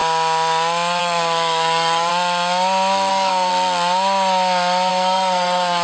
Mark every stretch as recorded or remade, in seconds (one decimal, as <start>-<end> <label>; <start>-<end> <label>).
0.0-1.0 recorded; 1.0-2.1 remade; 2.1-3.1 recorded; 3.1-3.5 remade; 3.5-4.9 recorded; 4.9-5.8 remade